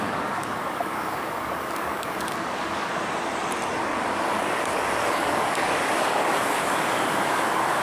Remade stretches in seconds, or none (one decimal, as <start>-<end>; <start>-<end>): 0.0-2.9; 3.8-7.8